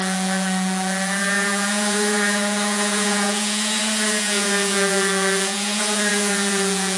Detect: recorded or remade remade